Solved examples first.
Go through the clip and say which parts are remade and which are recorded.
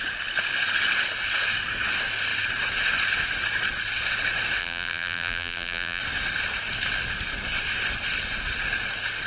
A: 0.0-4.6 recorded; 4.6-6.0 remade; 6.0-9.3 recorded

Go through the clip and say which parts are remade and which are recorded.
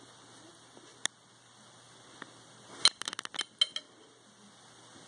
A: 0.0-5.1 recorded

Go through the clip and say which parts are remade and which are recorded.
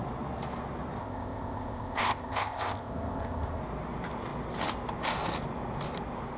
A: 0.0-1.0 recorded; 1.0-3.6 remade; 3.6-6.4 recorded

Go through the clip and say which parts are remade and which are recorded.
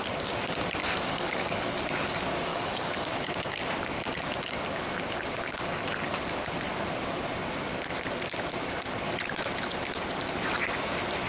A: 0.0-0.8 recorded; 0.8-1.8 remade; 1.8-2.5 recorded; 2.5-3.1 remade; 3.1-11.3 recorded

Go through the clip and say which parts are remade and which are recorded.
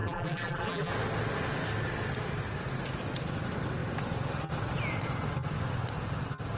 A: 0.0-0.9 remade; 0.9-6.6 recorded